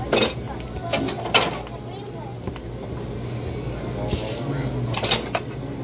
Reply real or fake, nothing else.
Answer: real